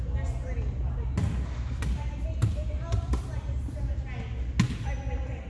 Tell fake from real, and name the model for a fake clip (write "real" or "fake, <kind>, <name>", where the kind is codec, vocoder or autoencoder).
real